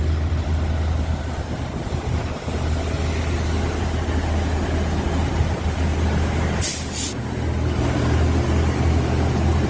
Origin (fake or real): real